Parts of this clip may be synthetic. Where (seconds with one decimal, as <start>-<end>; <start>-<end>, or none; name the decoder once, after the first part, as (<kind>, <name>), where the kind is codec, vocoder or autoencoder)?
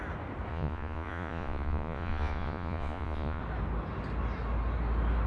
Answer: 0.5-3.4 (vocoder, Vocos)